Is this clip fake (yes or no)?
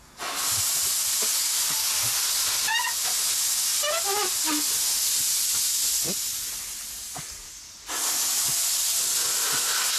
no